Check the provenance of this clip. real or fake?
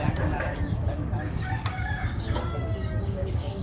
fake